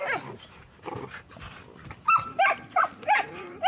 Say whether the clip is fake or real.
real